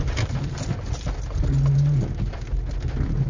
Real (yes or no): yes